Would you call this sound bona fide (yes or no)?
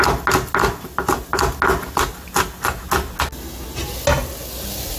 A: yes